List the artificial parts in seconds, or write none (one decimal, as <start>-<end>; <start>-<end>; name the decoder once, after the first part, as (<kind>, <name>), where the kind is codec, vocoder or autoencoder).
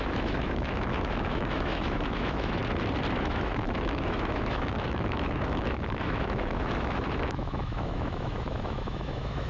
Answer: 0.0-2.6 (autoencoder, DAC-VAE); 3.2-9.5